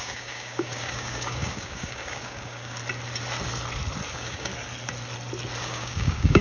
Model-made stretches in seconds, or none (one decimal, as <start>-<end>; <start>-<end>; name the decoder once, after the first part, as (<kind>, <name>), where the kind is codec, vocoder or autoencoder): 0.0-2.8 (codec, DAC); 4.1-4.5; 5.6-6.4